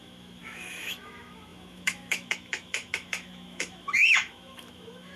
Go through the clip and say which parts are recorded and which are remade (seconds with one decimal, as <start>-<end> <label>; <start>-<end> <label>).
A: 0.0-5.2 remade